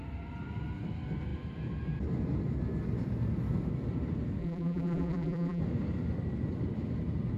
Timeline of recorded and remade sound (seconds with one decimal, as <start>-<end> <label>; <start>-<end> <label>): 0.0-4.4 recorded; 4.4-5.6 remade; 5.6-7.4 recorded

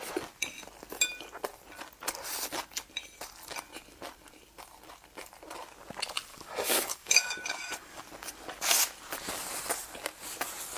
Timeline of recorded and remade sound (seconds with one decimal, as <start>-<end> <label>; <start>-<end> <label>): 0.0-6.3 recorded; 6.3-8.0 remade; 8.0-10.8 recorded

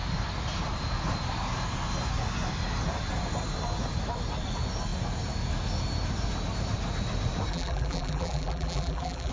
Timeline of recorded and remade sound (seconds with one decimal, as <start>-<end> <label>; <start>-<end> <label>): 0.0-7.5 recorded; 7.5-9.3 remade

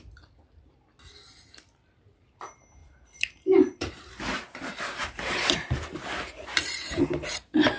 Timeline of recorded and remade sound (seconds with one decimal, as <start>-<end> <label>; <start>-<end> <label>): 0.0-2.8 recorded; 2.8-7.0 remade; 7.0-7.8 recorded

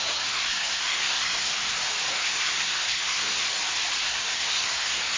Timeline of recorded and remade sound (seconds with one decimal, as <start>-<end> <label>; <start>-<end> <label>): 0.0-1.5 remade; 1.5-2.1 recorded; 2.1-3.4 remade; 3.4-4.0 recorded; 4.0-5.2 remade

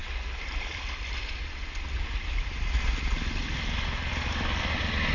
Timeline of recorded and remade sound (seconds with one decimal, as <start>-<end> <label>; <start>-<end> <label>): 0.0-1.6 remade; 1.6-5.1 recorded